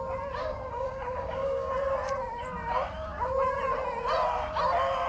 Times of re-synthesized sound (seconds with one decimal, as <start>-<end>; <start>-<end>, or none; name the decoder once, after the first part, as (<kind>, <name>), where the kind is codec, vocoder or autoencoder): 0.4-1.7 (codec, DAC)